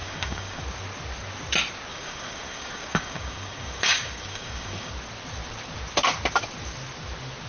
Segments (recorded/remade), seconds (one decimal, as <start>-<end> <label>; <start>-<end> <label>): 0.0-0.6 remade; 0.6-1.9 recorded; 1.9-4.9 remade; 4.9-7.5 recorded